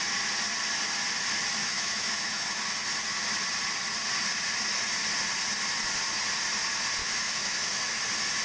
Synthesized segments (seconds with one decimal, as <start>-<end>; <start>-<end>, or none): 1.6-2.6; 7.0-8.0

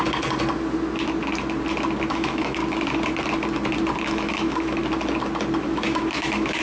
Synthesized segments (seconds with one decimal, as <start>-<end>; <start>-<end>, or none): 2.1-2.6; 4.0-4.8; 5.6-6.6

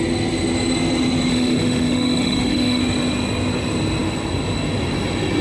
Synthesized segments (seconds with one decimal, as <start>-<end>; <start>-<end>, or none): 1.3-2.8

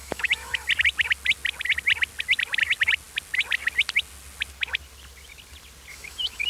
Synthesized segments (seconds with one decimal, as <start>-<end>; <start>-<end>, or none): 0.0-0.7; 5.9-6.5